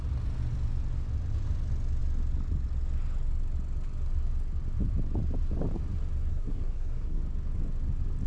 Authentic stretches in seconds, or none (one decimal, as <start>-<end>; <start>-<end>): 0.0-6.3; 7.2-8.3